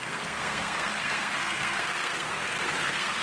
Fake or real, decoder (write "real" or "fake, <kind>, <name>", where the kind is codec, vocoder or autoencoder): fake, codec, SNAC